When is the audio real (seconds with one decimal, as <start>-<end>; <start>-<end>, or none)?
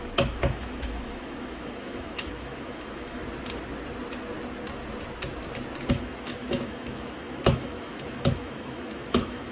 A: 3.2-5.9